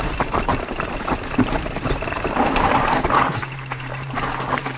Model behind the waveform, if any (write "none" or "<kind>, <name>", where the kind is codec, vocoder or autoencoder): vocoder, BigVGAN v2